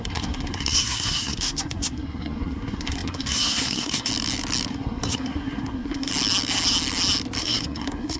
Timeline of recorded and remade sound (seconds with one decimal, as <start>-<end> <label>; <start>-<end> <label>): 0.0-4.1 remade; 4.1-4.7 recorded; 4.7-6.1 remade; 6.1-7.4 recorded; 7.4-8.2 remade